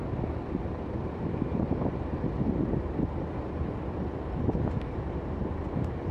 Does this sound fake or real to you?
real